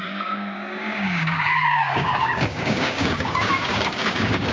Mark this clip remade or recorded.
remade